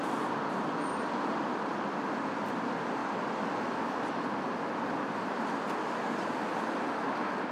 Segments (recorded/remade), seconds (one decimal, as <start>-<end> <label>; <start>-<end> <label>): 0.0-7.5 recorded